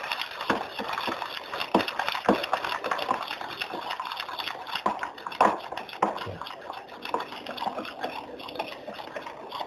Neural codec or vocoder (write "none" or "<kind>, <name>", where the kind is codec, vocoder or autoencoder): none